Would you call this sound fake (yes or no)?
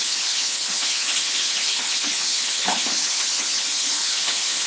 yes